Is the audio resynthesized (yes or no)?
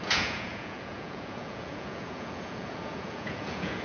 yes